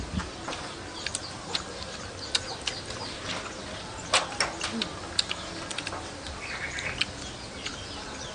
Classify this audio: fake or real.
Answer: real